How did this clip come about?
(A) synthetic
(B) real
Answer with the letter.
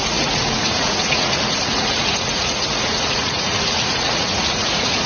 A